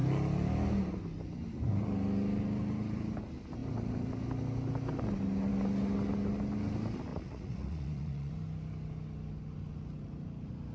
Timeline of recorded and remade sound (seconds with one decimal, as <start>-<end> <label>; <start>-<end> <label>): 0.0-7.1 recorded; 7.1-8.3 remade; 8.3-10.7 recorded